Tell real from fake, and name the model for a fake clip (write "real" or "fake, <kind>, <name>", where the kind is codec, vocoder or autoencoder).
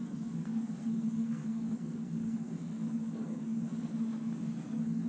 fake, codec, SNAC